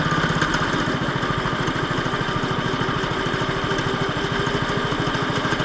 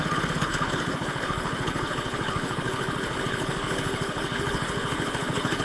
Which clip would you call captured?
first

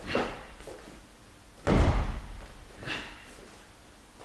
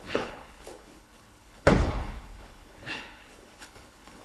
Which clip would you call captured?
first